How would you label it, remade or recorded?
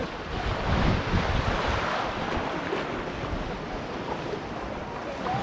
remade